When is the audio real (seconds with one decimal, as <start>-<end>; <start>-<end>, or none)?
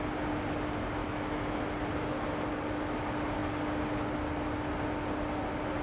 0.0-1.0; 1.6-5.8